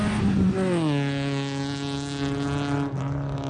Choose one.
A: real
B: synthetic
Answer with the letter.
A